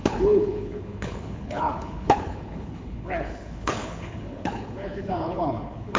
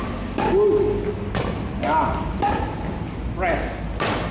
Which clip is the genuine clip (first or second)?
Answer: second